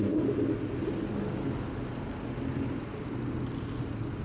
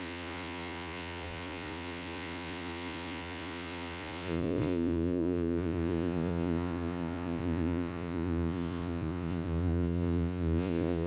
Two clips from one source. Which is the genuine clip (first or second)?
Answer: first